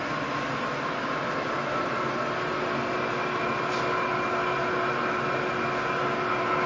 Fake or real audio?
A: real